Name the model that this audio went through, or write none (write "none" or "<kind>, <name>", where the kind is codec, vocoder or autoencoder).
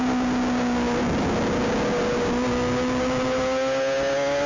none